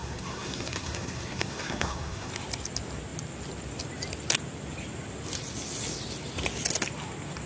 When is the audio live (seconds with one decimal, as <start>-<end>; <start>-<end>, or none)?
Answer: 2.3-7.5